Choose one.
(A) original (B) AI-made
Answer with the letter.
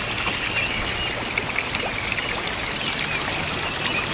A